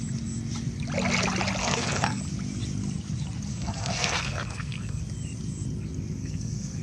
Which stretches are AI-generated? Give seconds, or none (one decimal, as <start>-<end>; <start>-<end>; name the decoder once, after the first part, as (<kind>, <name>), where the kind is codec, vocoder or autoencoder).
1.6-2.2 (codec, SNAC); 3.5-5.0; 6.2-6.8